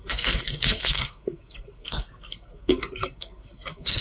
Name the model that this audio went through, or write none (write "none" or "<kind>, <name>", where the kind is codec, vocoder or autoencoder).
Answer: codec, SNAC